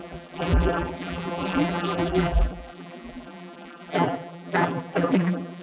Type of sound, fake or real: fake